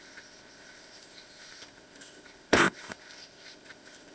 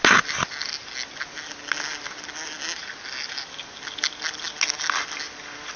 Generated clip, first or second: first